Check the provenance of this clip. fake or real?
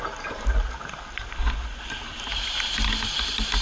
real